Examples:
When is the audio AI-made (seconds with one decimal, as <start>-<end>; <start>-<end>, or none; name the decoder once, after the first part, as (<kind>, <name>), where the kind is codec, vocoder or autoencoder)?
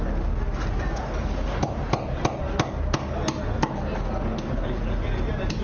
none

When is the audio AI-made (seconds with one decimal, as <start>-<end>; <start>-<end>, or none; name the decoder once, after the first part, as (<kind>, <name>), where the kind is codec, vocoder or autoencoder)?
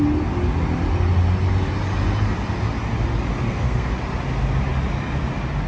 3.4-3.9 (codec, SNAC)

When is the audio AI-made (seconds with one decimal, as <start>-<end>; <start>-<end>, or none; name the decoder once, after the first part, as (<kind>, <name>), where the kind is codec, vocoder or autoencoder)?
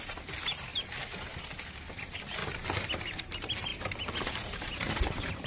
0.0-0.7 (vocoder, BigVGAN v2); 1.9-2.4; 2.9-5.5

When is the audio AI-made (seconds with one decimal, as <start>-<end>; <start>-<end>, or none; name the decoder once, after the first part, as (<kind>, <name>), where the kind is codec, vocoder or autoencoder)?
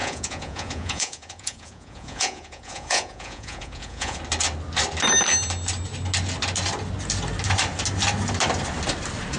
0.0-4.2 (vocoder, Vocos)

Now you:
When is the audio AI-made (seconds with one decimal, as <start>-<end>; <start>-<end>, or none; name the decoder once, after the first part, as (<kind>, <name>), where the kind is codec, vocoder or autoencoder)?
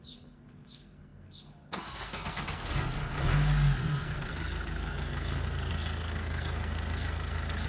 0.0-7.7 (codec, SNAC)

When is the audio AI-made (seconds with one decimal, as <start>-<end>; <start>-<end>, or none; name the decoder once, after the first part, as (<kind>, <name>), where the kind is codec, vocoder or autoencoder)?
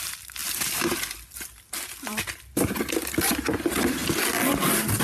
none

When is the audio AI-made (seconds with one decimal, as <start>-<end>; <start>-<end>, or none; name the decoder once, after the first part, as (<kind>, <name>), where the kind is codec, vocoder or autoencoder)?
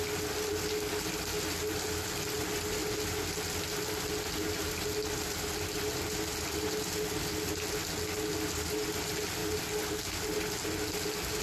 none